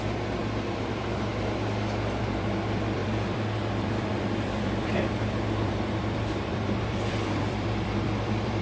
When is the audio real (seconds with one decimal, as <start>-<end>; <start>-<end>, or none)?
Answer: 1.3-2.2